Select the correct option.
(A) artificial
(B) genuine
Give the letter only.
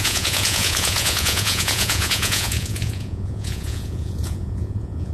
A